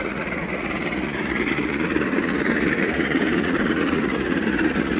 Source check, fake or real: fake